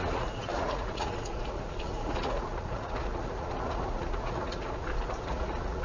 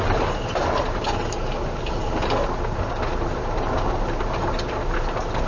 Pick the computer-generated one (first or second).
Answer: first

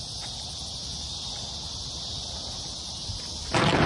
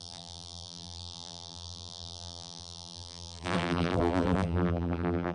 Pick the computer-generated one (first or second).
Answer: second